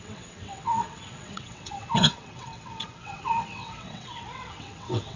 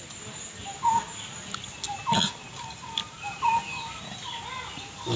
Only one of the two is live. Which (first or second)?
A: second